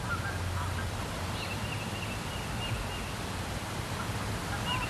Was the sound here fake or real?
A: real